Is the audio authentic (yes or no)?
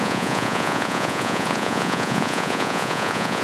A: no